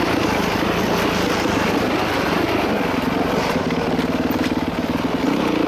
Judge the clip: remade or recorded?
recorded